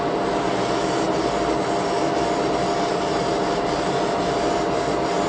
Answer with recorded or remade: recorded